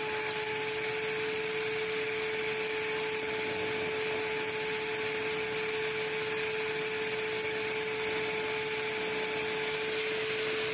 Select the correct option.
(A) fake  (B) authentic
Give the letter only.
B